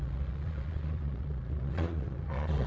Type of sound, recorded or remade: remade